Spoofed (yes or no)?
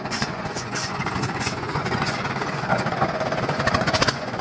yes